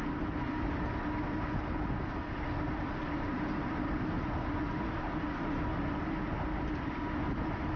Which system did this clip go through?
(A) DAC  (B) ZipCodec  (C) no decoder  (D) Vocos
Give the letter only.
C